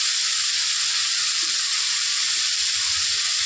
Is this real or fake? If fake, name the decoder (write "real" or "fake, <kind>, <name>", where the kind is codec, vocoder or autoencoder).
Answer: real